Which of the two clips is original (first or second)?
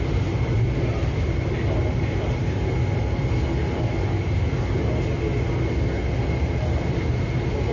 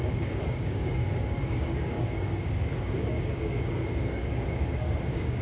first